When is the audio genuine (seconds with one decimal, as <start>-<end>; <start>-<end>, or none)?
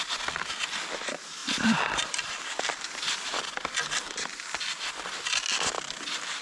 0.0-1.4; 3.3-6.4